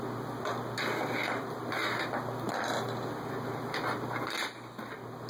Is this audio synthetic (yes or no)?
no